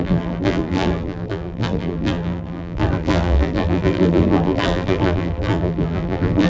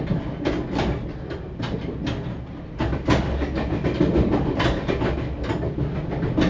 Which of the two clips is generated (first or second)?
first